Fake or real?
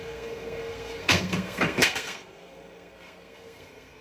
fake